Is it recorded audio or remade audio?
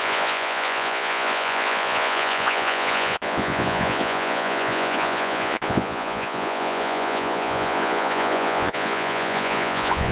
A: remade